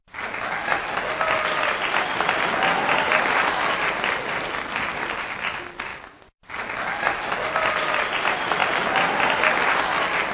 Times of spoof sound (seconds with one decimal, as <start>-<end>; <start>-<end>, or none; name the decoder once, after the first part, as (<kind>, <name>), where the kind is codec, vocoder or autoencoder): none